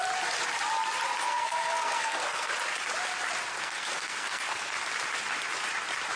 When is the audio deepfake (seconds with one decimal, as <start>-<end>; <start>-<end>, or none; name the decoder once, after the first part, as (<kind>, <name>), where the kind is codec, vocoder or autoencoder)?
1.2-2.5 (codec, SNAC); 3.5-4.7